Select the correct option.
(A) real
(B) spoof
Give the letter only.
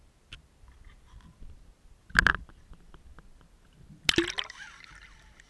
A